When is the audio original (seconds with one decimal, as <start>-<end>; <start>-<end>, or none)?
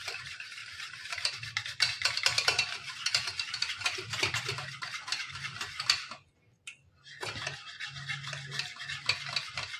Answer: 0.0-9.8